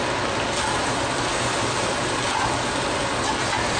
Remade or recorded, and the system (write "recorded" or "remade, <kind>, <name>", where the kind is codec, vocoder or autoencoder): recorded